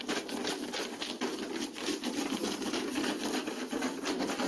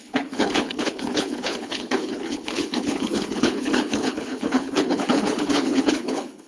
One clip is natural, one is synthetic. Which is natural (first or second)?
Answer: first